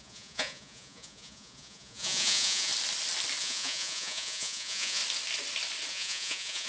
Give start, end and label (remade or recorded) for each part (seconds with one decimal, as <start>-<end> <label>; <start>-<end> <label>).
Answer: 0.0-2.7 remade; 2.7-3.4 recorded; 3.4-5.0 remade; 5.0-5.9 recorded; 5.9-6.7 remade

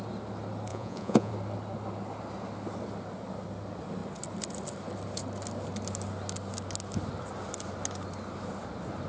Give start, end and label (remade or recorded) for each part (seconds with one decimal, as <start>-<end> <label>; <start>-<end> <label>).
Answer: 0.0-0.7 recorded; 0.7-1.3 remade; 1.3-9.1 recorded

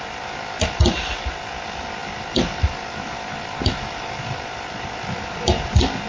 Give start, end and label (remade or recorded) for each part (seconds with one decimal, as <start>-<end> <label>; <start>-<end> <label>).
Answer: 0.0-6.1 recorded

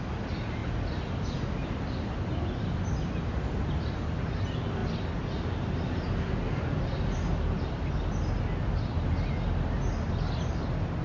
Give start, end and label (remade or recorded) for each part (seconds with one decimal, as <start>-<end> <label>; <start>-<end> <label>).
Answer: 0.0-11.0 recorded

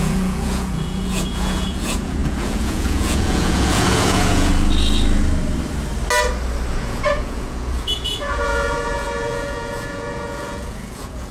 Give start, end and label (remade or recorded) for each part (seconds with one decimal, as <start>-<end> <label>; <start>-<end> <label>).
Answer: 0.0-4.5 remade; 4.5-6.7 recorded; 6.7-11.3 remade